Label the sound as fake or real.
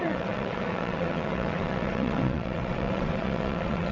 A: fake